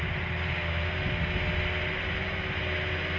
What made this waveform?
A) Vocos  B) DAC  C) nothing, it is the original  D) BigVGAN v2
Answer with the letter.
C